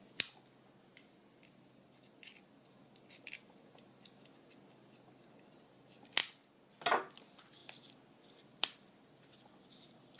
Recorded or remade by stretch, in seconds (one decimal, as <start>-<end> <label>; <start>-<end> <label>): 0.0-10.2 recorded